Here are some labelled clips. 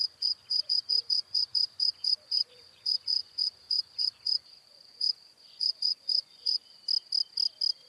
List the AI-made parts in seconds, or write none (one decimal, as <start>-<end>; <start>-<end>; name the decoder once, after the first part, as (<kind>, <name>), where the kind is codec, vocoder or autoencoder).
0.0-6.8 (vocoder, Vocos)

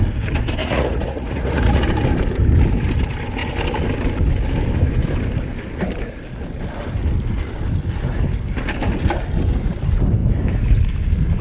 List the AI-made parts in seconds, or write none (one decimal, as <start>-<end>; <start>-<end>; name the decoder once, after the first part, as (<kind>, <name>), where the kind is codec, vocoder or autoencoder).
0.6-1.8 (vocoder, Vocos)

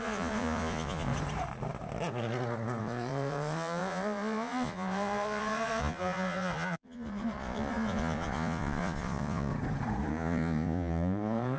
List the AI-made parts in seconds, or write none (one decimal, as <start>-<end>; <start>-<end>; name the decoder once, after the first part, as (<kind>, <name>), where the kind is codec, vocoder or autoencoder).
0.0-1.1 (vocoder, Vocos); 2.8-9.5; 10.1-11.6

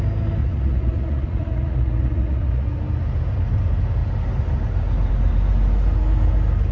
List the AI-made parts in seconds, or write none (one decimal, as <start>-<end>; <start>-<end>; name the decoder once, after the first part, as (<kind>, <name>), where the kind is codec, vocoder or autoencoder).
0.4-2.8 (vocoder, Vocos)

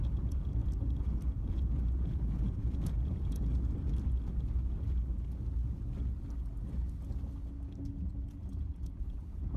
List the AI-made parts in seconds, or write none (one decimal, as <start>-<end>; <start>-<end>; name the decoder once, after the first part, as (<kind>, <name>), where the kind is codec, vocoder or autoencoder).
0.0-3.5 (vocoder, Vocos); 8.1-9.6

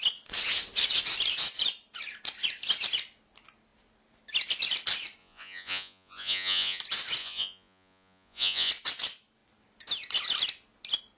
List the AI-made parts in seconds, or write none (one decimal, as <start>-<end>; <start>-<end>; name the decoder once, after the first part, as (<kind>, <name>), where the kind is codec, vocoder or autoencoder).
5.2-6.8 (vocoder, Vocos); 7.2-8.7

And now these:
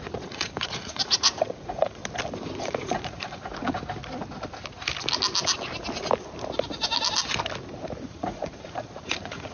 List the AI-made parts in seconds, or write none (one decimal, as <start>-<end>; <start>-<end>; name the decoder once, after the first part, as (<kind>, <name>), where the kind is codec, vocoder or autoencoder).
0.0-2.0 (vocoder, Vocos); 2.6-3.5; 8.1-9.5

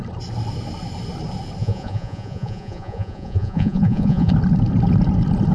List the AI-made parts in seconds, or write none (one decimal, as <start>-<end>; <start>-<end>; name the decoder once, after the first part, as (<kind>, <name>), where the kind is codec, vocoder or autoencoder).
1.6-4.3 (vocoder, Vocos)